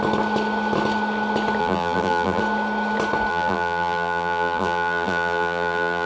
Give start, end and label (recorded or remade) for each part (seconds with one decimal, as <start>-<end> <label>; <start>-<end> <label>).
0.0-1.6 recorded; 1.6-2.4 remade; 2.4-3.3 recorded; 3.3-6.1 remade